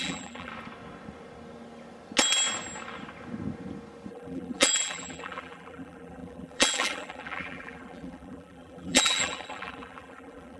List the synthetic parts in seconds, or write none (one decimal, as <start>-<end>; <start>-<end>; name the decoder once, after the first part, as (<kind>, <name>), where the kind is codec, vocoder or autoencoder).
0.0-0.5 (vocoder, BigVGAN v2); 4.1-10.6